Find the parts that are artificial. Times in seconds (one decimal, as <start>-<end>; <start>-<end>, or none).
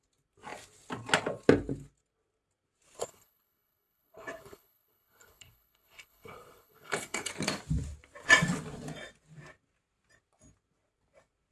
3.0-7.3